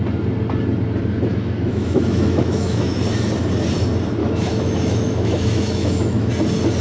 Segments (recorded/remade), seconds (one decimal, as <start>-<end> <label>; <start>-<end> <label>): 0.0-1.3 recorded; 1.3-3.0 remade; 3.0-4.2 recorded; 4.2-6.3 remade; 6.3-6.8 recorded